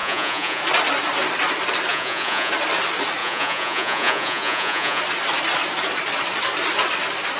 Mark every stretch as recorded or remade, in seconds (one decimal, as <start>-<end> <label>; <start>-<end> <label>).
0.0-0.6 remade; 0.6-1.9 recorded; 1.9-2.5 remade; 2.5-3.2 recorded; 3.2-5.0 remade; 5.0-7.4 recorded